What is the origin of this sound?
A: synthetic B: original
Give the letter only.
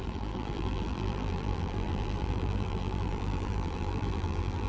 A